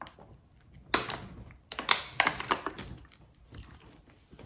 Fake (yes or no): no